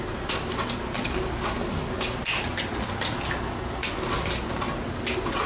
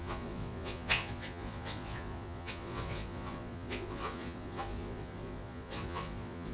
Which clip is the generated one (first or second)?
second